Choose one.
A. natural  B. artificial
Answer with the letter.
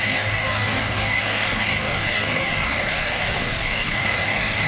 B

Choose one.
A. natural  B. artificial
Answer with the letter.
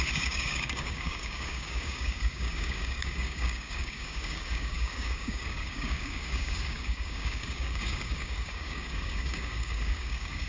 B